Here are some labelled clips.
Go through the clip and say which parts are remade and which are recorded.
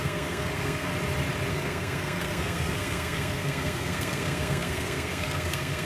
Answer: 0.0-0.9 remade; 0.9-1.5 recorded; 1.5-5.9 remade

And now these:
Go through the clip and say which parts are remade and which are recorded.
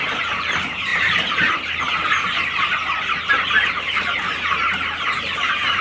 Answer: 0.0-1.9 remade; 1.9-3.3 recorded; 3.3-5.8 remade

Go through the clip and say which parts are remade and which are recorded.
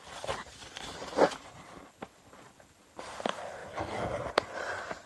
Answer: 0.0-5.1 recorded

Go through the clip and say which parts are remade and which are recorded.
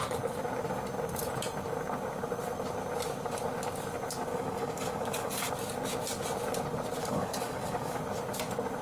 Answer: 0.0-4.3 recorded; 4.3-5.5 remade; 5.5-7.0 recorded; 7.0-8.0 remade; 8.0-8.8 recorded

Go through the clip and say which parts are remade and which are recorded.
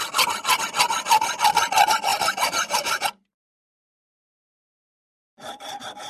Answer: 0.0-2.1 recorded; 2.1-4.0 remade; 4.0-5.0 recorded; 5.0-6.1 remade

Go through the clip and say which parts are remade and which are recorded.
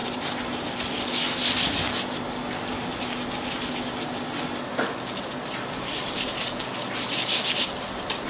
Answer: 0.0-8.3 recorded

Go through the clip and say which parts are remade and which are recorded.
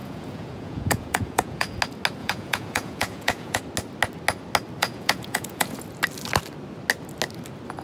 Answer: 0.0-1.8 remade; 1.8-2.2 recorded; 2.2-3.6 remade; 3.6-4.8 recorded; 4.8-5.8 remade; 5.8-7.8 recorded